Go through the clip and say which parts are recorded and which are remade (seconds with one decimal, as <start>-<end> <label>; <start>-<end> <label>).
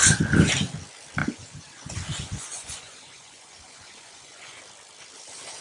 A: 0.0-1.2 recorded; 1.2-4.6 remade; 4.6-5.6 recorded